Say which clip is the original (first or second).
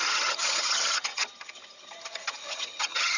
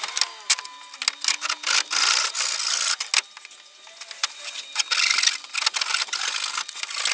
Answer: second